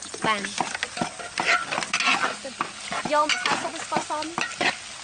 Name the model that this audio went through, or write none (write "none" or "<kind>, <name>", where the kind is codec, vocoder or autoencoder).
none